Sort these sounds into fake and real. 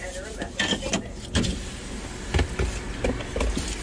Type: real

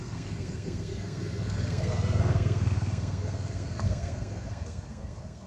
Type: fake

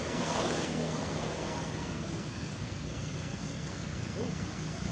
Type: fake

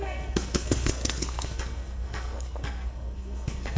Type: fake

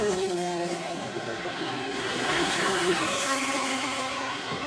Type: fake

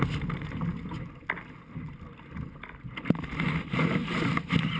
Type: real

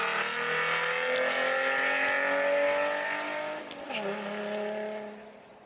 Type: real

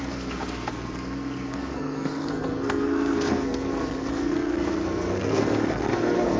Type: fake